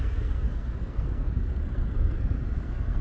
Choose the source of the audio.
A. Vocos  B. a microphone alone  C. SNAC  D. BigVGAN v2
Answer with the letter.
C